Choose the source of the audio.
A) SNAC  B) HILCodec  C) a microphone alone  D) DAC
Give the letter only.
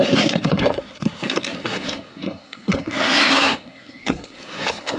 A